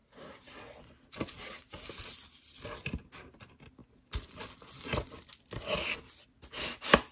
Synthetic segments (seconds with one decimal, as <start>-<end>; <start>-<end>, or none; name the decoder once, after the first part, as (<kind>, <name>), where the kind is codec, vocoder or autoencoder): none